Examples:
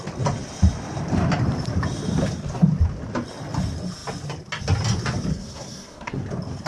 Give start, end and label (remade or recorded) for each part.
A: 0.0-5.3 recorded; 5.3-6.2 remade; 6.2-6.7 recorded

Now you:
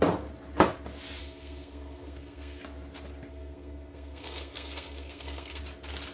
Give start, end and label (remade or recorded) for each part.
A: 0.0-1.2 recorded; 1.2-2.6 remade; 2.6-3.3 recorded; 3.3-5.6 remade; 5.6-6.1 recorded

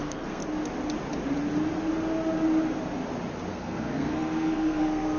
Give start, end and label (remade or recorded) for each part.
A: 0.0-0.4 remade; 0.4-3.5 recorded; 3.5-5.2 remade

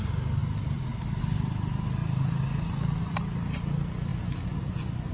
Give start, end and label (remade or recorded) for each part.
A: 0.0-5.1 recorded

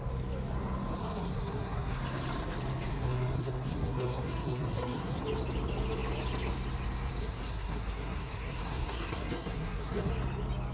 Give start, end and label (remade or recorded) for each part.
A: 0.0-1.0 recorded; 1.0-2.0 remade; 2.0-2.9 recorded; 2.9-5.2 remade; 5.2-7.2 recorded; 7.2-10.1 remade; 10.1-10.7 recorded

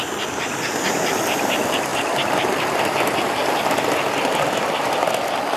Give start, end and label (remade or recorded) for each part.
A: 0.0-5.6 recorded